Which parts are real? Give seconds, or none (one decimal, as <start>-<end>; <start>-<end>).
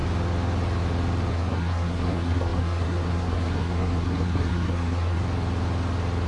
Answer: 0.0-1.3; 5.2-6.3